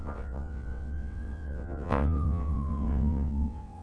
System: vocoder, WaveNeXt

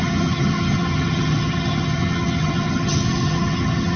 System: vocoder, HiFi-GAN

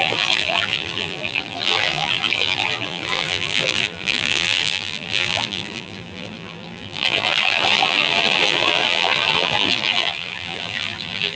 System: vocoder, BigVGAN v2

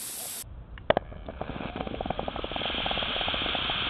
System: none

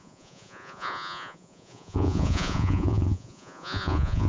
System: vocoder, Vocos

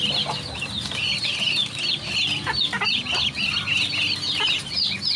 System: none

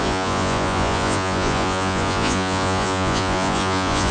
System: vocoder, Vocos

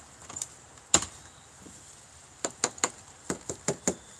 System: none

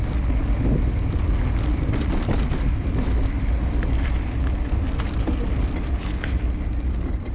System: none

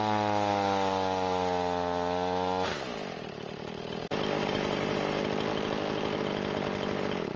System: none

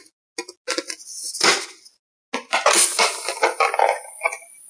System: none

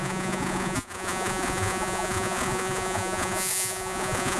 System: vocoder, Vocos